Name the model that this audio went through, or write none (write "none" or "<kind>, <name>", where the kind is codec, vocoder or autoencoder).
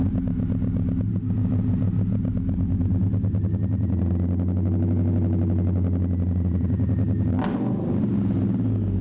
none